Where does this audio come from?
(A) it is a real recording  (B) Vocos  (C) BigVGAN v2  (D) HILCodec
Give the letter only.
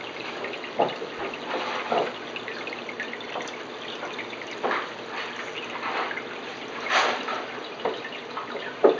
C